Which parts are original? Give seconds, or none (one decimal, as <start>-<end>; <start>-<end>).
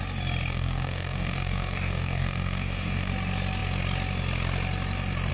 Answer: 0.0-0.5; 3.1-5.3